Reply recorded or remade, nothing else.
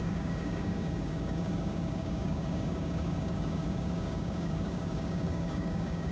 remade